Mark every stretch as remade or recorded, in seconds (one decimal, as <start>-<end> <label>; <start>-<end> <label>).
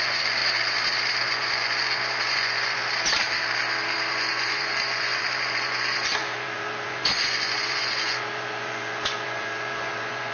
0.0-0.4 remade; 0.4-1.2 recorded; 1.2-2.8 remade; 2.8-4.1 recorded; 4.1-10.3 remade